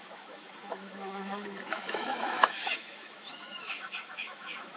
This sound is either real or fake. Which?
fake